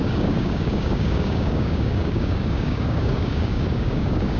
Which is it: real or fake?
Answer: fake